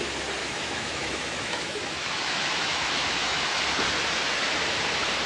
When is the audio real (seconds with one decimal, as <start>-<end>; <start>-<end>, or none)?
0.0-0.4; 3.6-5.3